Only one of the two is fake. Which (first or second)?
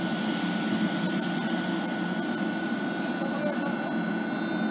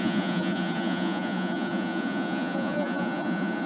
second